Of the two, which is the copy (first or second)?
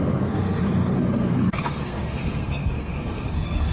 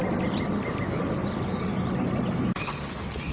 first